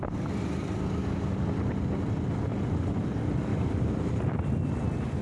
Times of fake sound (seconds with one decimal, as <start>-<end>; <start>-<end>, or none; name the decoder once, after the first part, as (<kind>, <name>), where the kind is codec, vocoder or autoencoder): 3.5-4.0 (vocoder, BigVGAN v2)

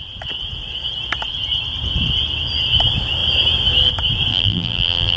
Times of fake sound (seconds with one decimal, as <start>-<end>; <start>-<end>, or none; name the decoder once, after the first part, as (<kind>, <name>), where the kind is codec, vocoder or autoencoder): 4.3-5.2 (vocoder, BigVGAN v2)

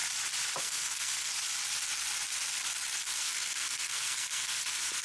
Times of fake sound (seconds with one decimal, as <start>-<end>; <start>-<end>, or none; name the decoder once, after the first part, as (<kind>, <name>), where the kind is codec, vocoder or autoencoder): 0.6-1.3 (codec, SNAC); 3.0-5.0

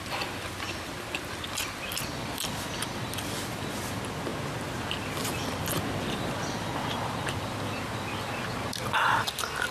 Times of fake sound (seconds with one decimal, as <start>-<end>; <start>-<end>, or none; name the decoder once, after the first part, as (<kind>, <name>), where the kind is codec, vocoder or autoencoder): none

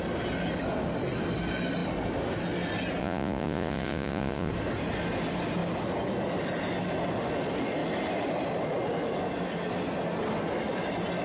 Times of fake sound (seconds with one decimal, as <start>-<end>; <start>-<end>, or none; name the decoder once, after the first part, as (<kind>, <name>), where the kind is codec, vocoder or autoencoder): 3.0-4.5 (vocoder, Vocos)

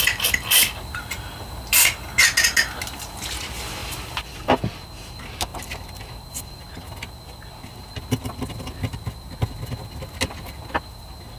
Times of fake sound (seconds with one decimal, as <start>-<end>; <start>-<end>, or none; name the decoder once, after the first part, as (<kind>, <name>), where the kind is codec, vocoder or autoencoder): 3.8-4.4 (vocoder, BigVGAN v2); 5.5-6.7

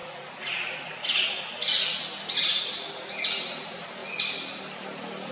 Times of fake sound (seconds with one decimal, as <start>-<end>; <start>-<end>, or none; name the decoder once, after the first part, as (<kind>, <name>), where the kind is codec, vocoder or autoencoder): 0.0-1.4 (vocoder, Vocos)

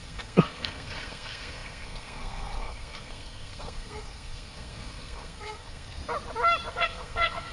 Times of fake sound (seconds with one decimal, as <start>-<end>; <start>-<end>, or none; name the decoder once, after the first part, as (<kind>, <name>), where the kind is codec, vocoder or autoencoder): 0.0-6.0 (codec, SNAC); 6.7-7.5